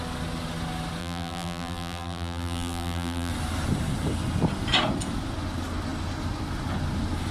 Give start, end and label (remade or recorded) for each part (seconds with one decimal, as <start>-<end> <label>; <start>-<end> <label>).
0.0-1.0 recorded; 1.0-3.3 remade; 3.3-7.3 recorded